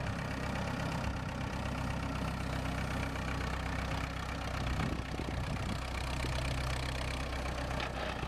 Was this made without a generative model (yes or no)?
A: yes